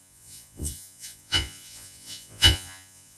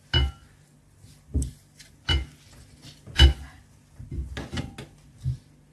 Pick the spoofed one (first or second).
first